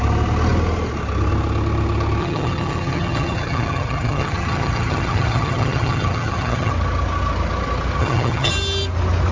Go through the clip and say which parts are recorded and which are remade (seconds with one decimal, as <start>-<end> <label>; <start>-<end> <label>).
0.0-2.2 recorded; 2.2-6.7 remade; 6.7-8.0 recorded; 8.0-8.5 remade; 8.5-9.3 recorded